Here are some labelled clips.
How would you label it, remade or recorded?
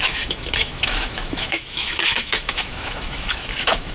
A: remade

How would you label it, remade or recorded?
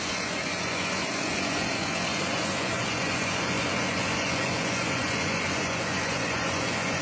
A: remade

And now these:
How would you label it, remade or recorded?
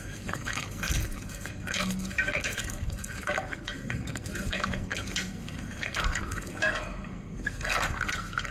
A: remade